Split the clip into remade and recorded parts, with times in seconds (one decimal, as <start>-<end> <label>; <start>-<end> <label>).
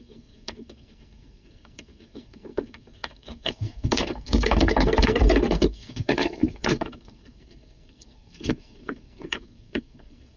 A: 0.0-10.4 remade